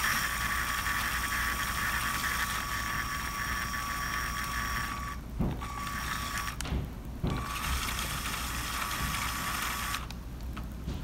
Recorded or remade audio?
recorded